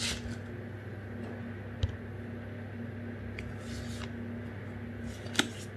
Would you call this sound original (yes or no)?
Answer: yes